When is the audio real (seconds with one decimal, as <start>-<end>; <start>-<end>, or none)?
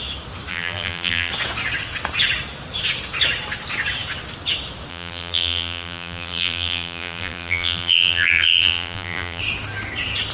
0.0-0.5; 1.3-4.9; 9.4-10.3